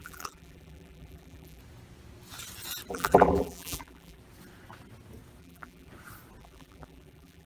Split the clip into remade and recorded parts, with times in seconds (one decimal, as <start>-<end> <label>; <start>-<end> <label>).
0.0-1.6 remade; 1.6-2.9 recorded; 2.9-4.2 remade; 4.2-5.4 recorded; 5.4-5.9 remade; 5.9-6.4 recorded; 6.4-7.4 remade